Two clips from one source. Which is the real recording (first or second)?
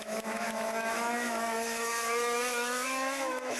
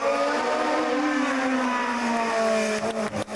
second